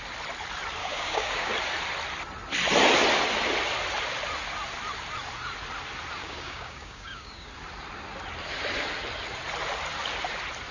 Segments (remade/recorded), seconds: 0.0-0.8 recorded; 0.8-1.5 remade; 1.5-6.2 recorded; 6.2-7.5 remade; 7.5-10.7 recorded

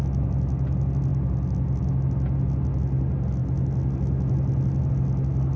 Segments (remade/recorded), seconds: 0.0-5.6 recorded

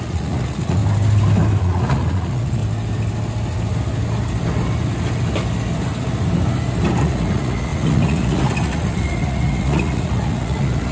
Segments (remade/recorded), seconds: 0.0-0.8 remade; 0.8-1.6 recorded; 1.6-2.6 remade; 2.6-7.0 recorded; 7.0-10.9 remade

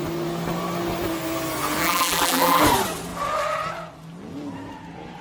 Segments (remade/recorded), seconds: 0.0-1.8 recorded; 1.8-2.6 remade; 2.6-5.2 recorded

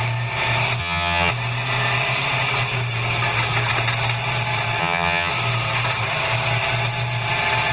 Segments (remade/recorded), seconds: 0.0-0.8 recorded; 0.8-1.3 remade; 1.3-4.8 recorded; 4.8-5.3 remade; 5.3-7.7 recorded

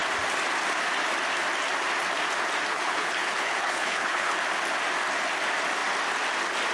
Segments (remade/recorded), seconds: 0.0-2.7 recorded; 2.7-4.3 remade; 4.3-6.7 recorded

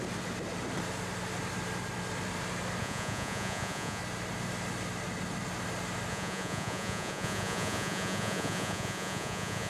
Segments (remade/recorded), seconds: 0.0-2.8 recorded; 2.8-4.0 remade; 4.0-6.1 recorded; 6.1-9.7 remade